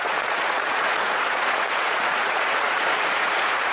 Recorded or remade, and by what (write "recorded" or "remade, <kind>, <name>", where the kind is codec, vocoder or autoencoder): remade, vocoder, Vocos